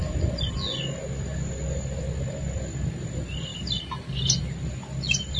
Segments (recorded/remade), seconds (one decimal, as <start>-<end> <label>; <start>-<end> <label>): 0.0-5.4 recorded